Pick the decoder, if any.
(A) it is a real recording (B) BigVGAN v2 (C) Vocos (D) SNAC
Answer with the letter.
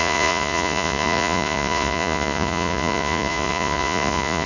C